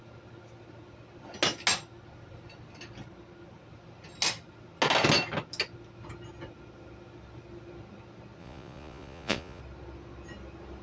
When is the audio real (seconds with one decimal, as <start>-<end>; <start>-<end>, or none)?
0.0-8.4; 9.6-10.8